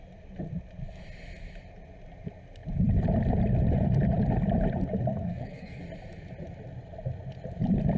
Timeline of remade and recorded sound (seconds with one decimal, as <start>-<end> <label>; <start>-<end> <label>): 0.0-5.2 recorded; 5.2-5.8 remade; 5.8-8.0 recorded